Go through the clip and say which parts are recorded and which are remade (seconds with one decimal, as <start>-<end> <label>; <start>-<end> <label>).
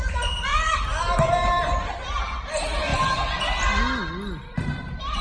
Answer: 0.0-5.2 recorded